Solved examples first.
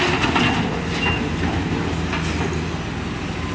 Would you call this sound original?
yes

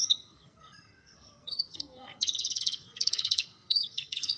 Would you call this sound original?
no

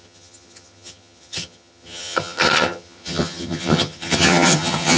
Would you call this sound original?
no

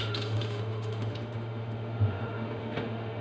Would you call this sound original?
no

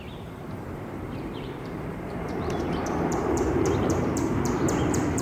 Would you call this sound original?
no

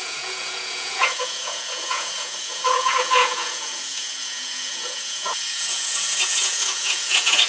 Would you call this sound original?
no